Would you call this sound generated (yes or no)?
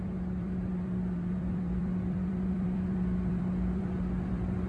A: yes